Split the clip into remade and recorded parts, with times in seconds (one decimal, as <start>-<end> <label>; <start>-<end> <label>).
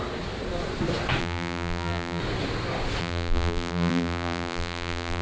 0.0-1.2 recorded; 1.2-2.2 remade; 2.2-3.0 recorded; 3.0-5.2 remade